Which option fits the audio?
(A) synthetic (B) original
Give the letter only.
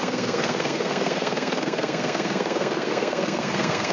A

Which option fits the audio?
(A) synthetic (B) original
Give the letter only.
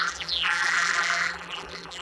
A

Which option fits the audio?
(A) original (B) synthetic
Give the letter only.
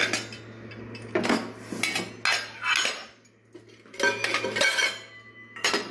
A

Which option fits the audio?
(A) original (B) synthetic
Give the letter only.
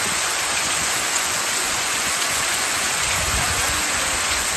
B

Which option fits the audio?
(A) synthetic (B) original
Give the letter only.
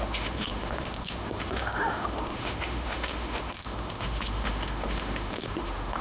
A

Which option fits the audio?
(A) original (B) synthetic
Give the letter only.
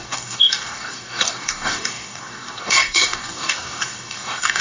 B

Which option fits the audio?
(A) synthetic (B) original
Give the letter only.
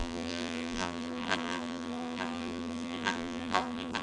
A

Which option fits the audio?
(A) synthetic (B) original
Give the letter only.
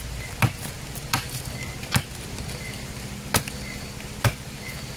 B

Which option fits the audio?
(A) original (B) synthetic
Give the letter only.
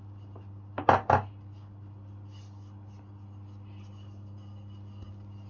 A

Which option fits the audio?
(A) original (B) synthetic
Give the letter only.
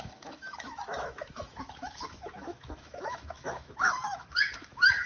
B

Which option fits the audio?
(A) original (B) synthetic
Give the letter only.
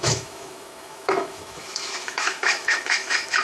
B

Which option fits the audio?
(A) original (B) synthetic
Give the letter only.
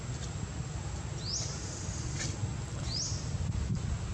A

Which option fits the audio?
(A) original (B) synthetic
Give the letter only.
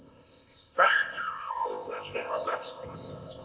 B